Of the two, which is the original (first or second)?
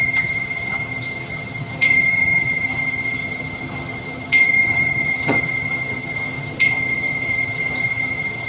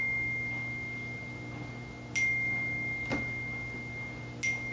second